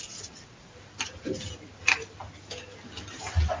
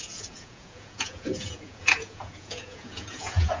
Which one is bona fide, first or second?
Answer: first